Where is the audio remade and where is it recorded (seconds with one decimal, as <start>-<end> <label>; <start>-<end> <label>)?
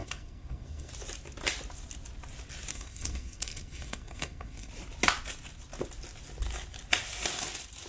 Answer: 0.0-0.9 remade; 0.9-2.7 recorded; 2.7-4.7 remade; 4.7-7.9 recorded